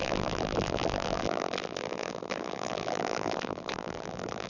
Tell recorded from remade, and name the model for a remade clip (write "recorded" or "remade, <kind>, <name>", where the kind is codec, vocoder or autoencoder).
remade, vocoder, BigVGAN v2